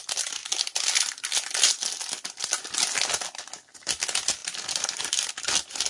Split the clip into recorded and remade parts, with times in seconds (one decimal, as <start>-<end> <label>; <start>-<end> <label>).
0.0-4.4 recorded; 4.4-5.3 remade; 5.3-5.9 recorded